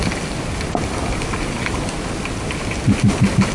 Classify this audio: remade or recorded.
recorded